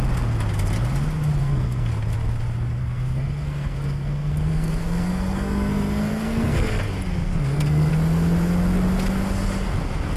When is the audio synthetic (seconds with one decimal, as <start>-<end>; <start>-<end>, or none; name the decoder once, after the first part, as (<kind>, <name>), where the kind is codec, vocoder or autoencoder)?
1.4-1.9 (codec, SNAC); 2.8-6.8; 7.2-7.9